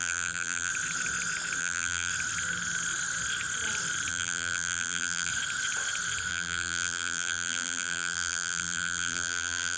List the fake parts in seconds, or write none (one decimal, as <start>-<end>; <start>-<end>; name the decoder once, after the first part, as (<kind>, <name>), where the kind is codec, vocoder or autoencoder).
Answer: 0.0-0.7 (vocoder, BigVGAN v2); 1.6-2.1; 4.1-5.3; 6.3-9.8